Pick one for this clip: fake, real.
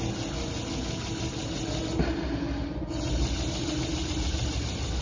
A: real